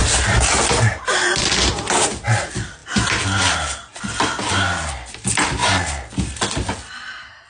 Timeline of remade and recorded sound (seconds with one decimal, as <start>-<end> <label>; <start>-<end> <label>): 0.0-7.5 recorded